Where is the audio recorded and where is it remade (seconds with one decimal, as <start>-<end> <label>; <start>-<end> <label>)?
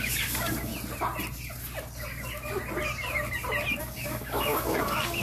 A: 0.0-0.7 remade; 0.7-3.8 recorded; 3.8-5.2 remade